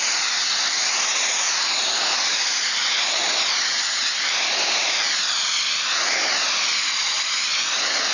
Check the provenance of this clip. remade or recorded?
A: recorded